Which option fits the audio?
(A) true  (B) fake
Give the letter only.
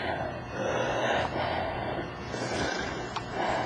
A